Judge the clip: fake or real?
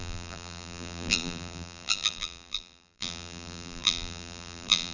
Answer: fake